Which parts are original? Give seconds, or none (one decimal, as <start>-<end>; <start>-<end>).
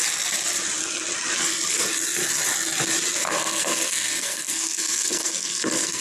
0.0-3.2